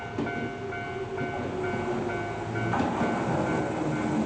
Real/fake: real